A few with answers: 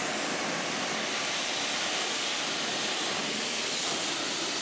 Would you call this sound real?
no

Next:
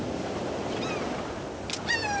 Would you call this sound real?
yes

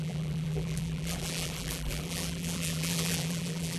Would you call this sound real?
no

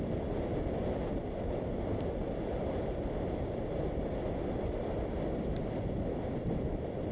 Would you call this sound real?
yes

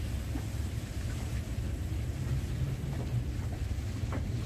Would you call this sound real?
yes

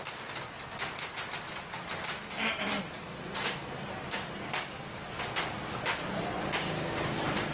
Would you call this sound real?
yes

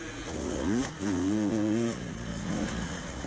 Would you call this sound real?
no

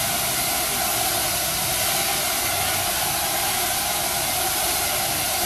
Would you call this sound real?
yes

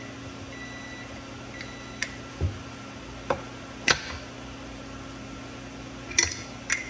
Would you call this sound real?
yes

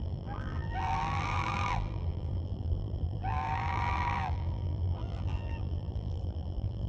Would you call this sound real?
no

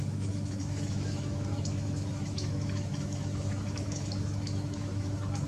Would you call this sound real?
no